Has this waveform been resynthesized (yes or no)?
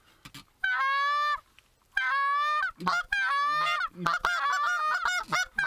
no